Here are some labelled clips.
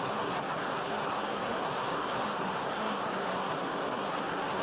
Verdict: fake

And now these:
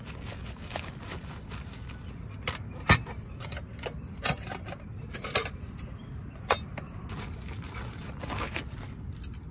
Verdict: real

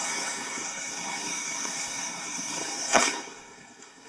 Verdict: fake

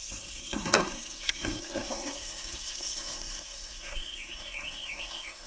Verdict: fake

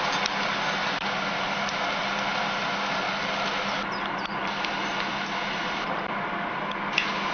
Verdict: real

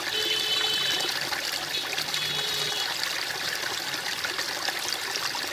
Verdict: real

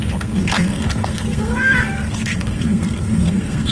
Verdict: fake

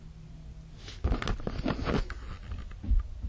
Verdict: real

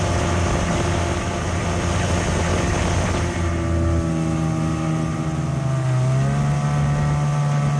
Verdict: real